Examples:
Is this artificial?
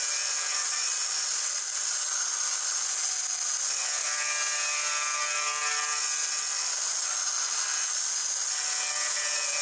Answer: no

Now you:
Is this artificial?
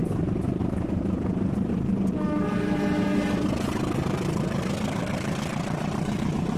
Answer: yes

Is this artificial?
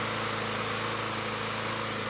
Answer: no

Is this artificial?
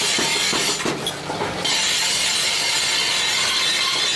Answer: no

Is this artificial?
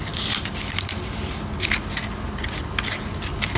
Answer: no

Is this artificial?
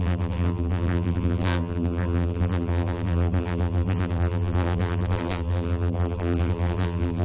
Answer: yes